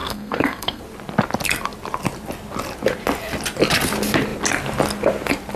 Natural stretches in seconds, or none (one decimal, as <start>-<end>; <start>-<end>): 0.8-5.6